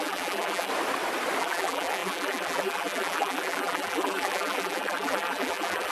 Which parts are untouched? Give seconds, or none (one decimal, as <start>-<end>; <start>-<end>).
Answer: 0.7-1.4